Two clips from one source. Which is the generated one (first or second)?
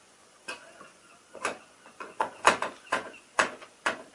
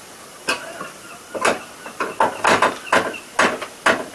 first